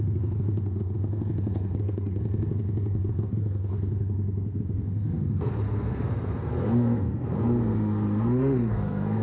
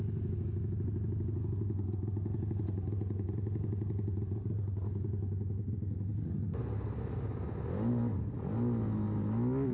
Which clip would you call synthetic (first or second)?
first